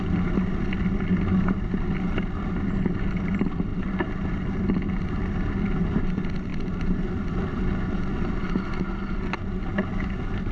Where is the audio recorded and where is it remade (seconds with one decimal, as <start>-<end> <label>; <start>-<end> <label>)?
0.0-6.5 recorded; 6.5-7.1 remade; 7.1-10.5 recorded

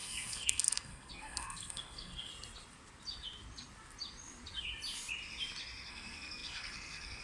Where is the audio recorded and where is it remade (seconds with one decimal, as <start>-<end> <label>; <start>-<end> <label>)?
0.0-2.3 remade; 2.3-5.9 recorded; 5.9-7.2 remade

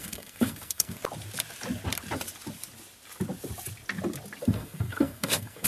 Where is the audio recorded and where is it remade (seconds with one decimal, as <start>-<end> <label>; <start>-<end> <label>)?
0.0-1.0 remade; 1.0-4.4 recorded; 4.4-5.7 remade

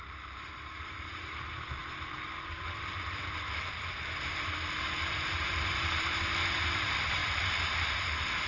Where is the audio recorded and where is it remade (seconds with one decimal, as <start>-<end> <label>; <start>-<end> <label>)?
0.0-8.5 remade

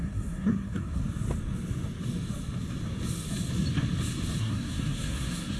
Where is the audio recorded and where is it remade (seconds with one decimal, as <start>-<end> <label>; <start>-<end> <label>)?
0.0-1.0 remade; 1.0-4.4 recorded; 4.4-5.6 remade

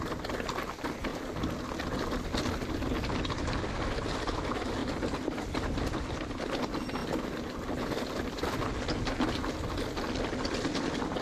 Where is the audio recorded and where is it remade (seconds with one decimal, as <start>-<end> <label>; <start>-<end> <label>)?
0.0-11.2 recorded

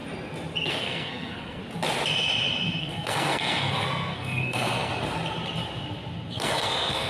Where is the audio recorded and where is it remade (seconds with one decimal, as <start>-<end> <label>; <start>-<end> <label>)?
0.0-0.7 recorded; 0.7-1.6 remade; 1.6-2.8 recorded; 2.8-4.9 remade; 4.9-6.3 recorded; 6.3-7.1 remade